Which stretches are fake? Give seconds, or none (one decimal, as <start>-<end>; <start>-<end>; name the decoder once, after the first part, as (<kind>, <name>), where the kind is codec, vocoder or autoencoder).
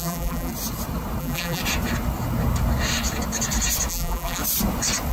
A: 0.0-0.5 (vocoder, BigVGAN v2); 1.2-1.6; 3.9-4.4